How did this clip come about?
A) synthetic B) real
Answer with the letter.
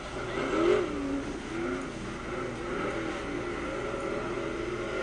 B